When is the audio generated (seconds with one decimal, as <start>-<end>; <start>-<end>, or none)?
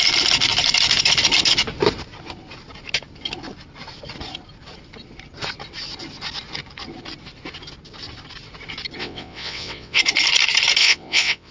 9.0-10.0; 10.8-11.5